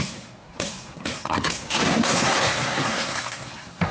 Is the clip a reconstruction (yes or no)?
yes